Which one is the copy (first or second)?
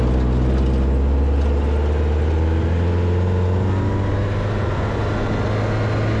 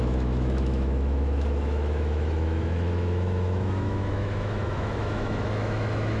second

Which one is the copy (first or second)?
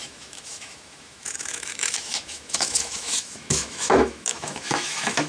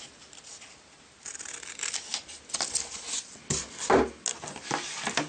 first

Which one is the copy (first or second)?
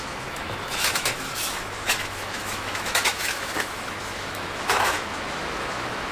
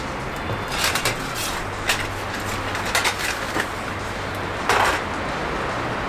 first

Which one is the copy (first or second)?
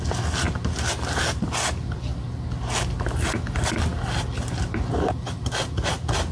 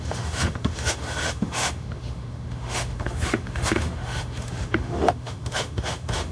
second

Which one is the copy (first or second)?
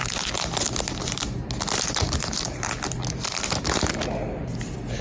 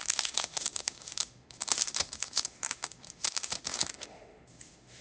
second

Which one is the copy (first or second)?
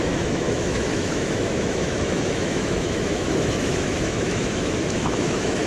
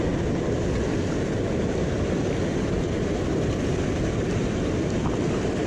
first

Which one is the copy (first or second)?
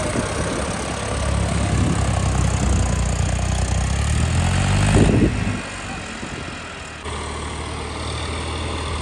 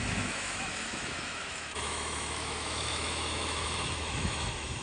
second